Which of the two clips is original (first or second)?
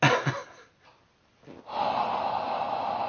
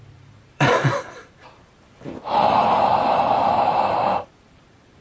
first